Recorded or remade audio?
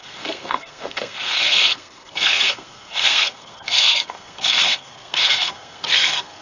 remade